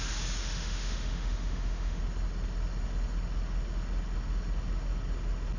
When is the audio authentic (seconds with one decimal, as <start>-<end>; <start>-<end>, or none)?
0.0-0.4; 2.0-5.6